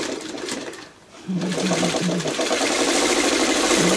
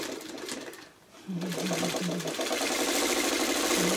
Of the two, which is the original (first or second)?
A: second